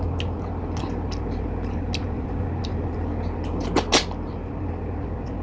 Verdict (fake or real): real